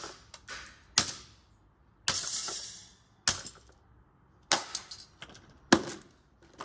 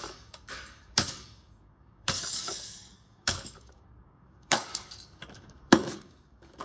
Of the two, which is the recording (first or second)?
first